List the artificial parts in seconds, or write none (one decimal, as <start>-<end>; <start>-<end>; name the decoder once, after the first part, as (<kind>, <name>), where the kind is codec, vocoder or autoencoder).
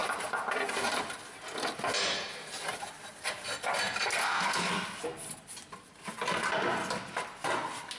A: 4.2-4.7 (codec, SNAC)